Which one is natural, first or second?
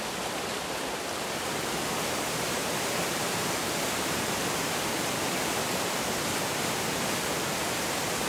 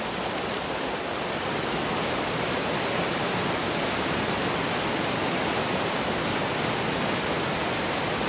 second